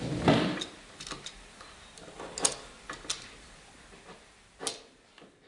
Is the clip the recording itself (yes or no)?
yes